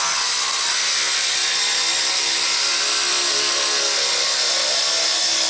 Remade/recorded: recorded